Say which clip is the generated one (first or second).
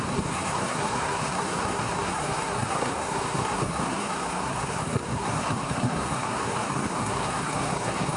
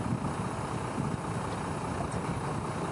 first